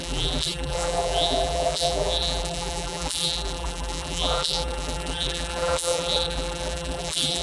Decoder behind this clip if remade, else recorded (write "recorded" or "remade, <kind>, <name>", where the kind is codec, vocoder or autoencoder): remade, vocoder, BigVGAN v2